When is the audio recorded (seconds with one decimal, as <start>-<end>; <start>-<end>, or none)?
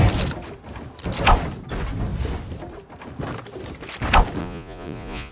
0.0-4.4